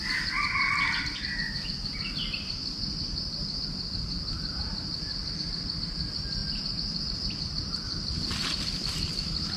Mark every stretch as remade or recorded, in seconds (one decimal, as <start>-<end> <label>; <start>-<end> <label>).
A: 0.0-9.6 recorded